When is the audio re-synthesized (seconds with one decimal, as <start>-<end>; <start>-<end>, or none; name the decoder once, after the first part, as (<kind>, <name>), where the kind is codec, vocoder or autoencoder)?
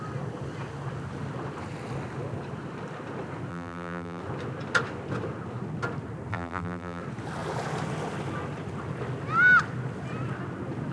3.5-4.2 (vocoder, BigVGAN v2); 6.3-7.0